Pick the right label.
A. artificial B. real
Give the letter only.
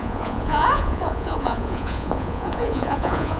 A